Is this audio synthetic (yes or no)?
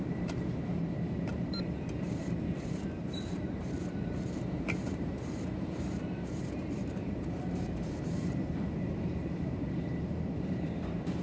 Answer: yes